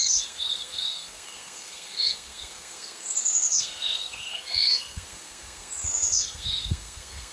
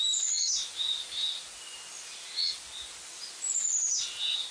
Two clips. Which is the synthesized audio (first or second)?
first